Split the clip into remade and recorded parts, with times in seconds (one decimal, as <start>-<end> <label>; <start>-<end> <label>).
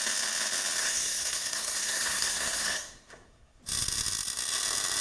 0.0-0.8 recorded; 0.8-3.6 remade; 3.6-5.0 recorded